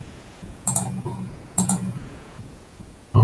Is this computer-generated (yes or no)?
yes